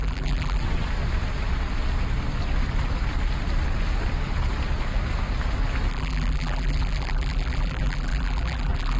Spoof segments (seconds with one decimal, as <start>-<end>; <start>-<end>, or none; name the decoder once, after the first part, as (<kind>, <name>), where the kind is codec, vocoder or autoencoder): 0.0-0.6 (vocoder, BigVGAN v2); 5.9-9.0